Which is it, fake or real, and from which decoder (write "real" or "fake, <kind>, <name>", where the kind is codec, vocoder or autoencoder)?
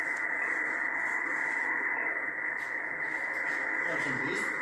real